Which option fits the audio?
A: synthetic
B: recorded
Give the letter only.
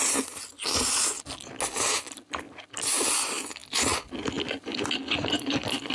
B